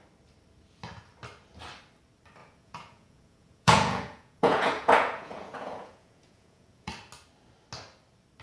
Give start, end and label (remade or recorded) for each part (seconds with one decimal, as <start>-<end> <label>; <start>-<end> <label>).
0.0-2.4 recorded; 2.4-6.9 remade; 6.9-8.4 recorded